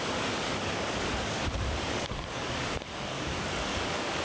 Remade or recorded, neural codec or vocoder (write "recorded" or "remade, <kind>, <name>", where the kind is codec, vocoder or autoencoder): remade, codec, DAC